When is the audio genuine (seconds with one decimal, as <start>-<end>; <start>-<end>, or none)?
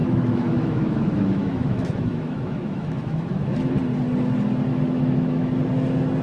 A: 3.7-4.7; 5.6-6.2